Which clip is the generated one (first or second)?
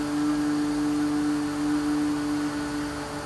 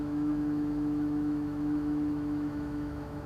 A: second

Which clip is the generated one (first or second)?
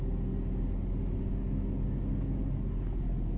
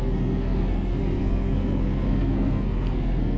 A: second